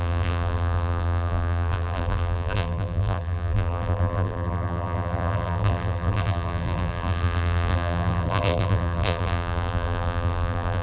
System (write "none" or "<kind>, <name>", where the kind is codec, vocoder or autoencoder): vocoder, BigVGAN v2